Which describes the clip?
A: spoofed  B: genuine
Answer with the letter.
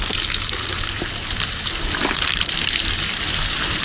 B